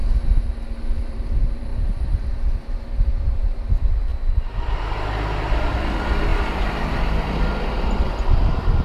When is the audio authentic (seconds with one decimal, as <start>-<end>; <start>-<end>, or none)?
0.0-1.1; 4.1-4.7